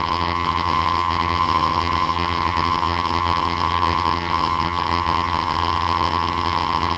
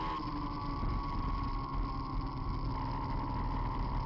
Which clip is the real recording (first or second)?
second